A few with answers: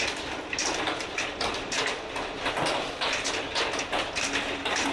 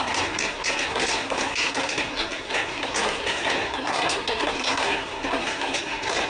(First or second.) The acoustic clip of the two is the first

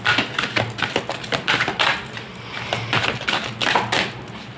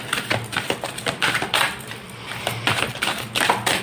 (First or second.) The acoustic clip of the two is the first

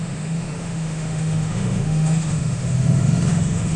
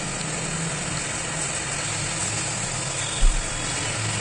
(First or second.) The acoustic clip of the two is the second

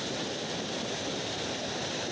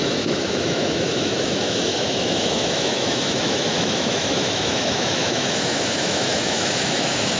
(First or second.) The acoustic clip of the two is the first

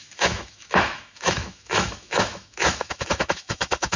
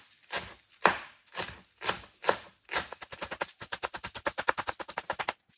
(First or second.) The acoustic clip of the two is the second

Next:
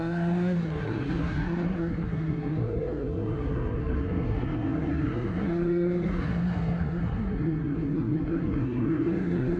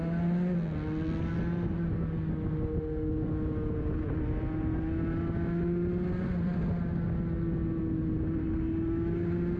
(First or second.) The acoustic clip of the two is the second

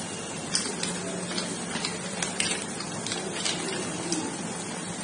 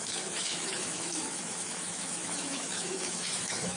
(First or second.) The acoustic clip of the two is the first